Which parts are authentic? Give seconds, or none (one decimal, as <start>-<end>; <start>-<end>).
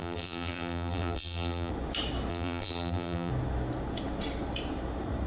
1.7-2.3; 3.3-5.3